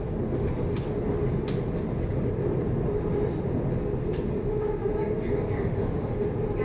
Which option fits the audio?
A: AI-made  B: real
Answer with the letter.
B